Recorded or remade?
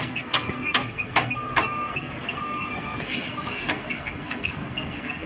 remade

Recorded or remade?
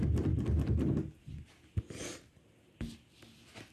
recorded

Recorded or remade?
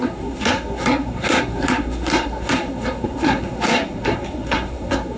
remade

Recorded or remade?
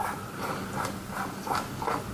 recorded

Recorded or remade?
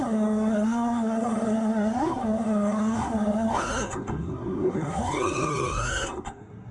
remade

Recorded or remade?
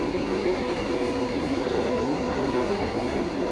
remade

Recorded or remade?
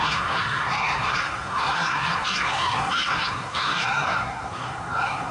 remade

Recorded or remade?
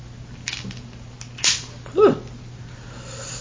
recorded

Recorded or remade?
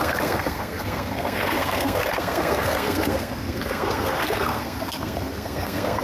remade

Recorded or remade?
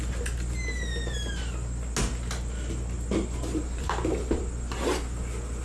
recorded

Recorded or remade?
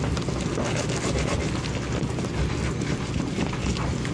recorded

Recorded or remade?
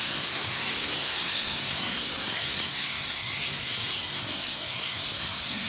remade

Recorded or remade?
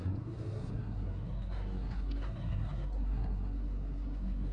remade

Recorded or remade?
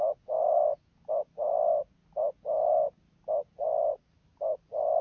recorded